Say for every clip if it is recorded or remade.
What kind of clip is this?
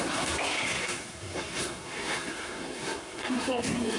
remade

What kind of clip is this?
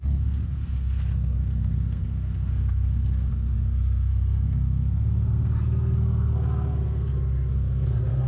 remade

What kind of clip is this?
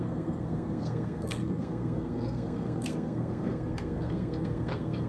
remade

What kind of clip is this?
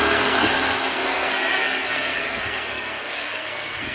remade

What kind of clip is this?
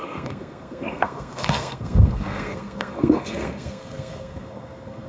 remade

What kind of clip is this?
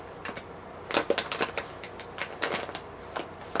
recorded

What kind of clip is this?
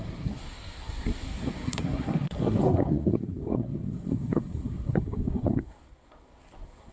remade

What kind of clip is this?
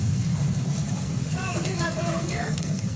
remade